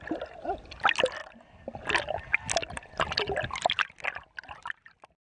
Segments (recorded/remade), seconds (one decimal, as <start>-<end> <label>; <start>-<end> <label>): 0.0-5.3 recorded